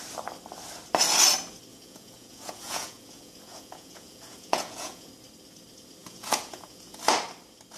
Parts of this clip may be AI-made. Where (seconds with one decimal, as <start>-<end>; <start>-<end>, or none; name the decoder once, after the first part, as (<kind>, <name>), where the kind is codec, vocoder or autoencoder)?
1.7-5.1 (vocoder, Vocos); 6.0-7.0